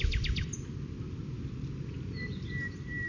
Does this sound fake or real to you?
real